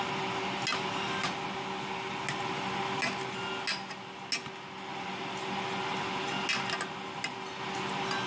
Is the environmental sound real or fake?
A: real